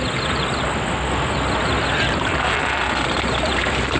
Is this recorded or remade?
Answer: recorded